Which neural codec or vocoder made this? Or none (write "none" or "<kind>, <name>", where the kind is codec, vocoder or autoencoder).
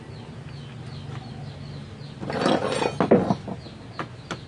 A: none